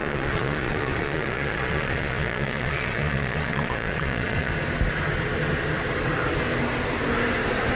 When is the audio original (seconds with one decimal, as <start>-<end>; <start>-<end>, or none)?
4.5-7.7